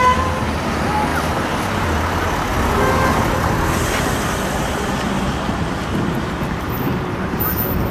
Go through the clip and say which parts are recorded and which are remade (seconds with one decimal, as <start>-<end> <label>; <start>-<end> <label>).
0.0-7.9 recorded